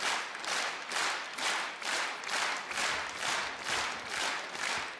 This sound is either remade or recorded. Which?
remade